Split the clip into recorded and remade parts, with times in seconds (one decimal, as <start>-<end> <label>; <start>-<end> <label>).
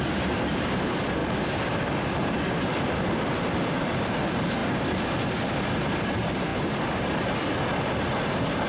0.0-8.7 recorded